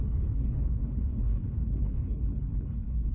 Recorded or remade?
remade